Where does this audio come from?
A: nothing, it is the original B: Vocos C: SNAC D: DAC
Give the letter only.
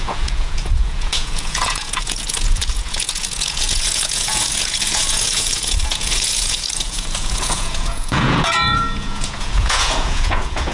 B